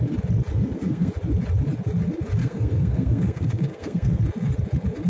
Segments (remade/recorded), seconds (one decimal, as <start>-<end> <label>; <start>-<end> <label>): 0.0-0.5 recorded; 0.5-1.1 remade; 1.1-2.4 recorded; 2.4-4.2 remade; 4.2-5.1 recorded